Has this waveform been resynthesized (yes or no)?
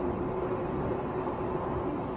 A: no